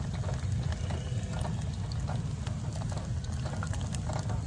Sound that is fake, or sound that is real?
real